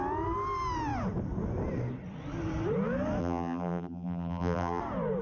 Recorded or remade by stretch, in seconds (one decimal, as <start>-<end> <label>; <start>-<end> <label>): 0.0-3.2 recorded; 3.2-4.8 remade; 4.8-5.2 recorded